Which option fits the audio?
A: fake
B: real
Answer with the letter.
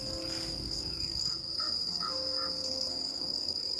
A